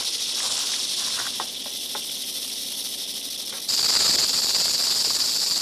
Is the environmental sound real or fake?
real